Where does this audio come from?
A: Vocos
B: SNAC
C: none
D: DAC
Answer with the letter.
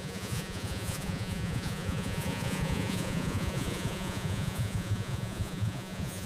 A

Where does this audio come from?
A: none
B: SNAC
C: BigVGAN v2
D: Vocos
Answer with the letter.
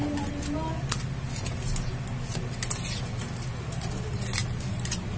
A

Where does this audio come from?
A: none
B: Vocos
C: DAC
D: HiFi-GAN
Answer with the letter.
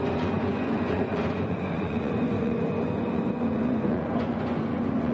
B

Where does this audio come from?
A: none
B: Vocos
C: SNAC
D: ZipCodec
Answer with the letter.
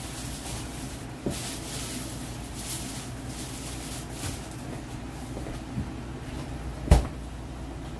A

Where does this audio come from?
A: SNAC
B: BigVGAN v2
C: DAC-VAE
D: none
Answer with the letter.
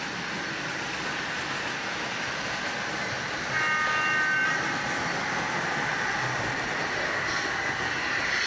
D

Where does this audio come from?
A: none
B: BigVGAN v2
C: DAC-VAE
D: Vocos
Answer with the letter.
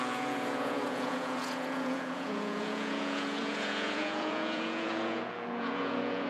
D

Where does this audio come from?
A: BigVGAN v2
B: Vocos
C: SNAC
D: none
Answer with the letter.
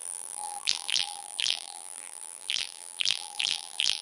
A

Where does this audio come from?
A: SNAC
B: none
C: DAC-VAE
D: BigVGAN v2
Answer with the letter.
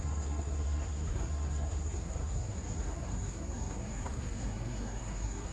A